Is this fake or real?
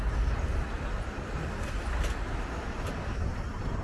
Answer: real